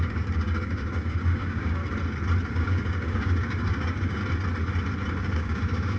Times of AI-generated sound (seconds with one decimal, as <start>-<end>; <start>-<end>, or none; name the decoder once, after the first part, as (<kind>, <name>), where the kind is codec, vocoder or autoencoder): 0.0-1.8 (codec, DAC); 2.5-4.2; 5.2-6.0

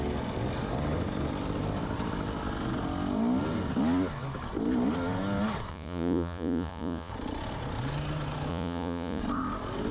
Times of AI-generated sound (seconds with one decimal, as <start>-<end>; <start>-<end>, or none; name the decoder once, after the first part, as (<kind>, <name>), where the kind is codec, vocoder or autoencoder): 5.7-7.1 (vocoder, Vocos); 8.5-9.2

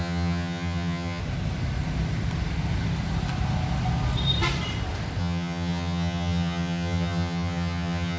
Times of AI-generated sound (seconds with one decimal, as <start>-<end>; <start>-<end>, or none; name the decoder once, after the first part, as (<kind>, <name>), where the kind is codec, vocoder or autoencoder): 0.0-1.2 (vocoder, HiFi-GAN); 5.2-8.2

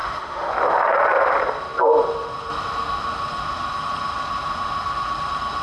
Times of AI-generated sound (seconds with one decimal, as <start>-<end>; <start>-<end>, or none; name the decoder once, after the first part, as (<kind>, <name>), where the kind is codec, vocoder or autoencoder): 0.0-0.5 (autoencoder, DAC-VAE)